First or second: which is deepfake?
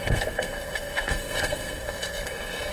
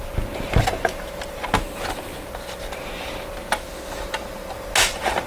first